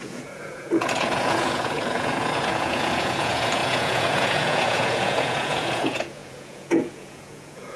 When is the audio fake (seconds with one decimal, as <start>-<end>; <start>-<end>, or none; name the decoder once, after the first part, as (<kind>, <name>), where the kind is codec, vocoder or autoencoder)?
0.0-7.8 (vocoder, Vocos)